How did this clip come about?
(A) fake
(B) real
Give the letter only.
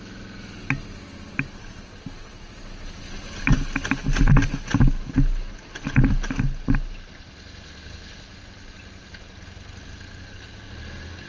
B